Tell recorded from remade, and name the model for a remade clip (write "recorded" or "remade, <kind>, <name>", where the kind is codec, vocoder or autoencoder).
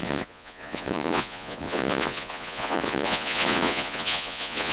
remade, vocoder, Vocos